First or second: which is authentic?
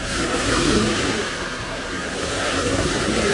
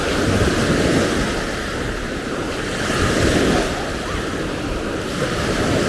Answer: second